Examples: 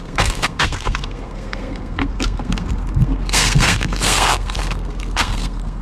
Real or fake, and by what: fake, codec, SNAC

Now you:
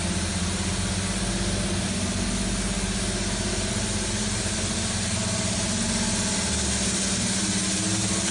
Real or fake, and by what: real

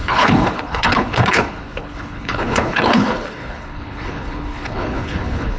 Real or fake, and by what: fake, codec, HILCodec